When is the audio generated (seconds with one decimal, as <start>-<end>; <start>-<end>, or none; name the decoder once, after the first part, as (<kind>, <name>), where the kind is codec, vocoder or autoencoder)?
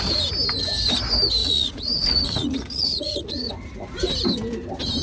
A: 1.4-3.5 (vocoder, Vocos)